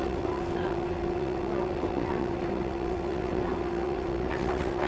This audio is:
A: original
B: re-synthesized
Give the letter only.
B